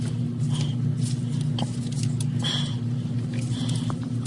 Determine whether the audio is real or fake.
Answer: real